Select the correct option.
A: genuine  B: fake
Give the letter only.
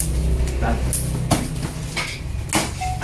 A